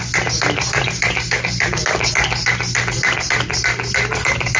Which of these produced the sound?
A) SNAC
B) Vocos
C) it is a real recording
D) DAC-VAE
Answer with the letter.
C